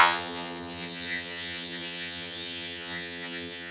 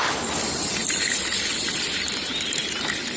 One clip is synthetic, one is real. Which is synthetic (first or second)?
first